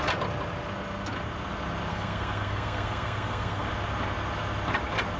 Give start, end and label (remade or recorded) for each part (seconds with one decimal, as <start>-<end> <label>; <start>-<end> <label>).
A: 0.0-1.9 recorded; 1.9-3.7 remade; 3.7-5.2 recorded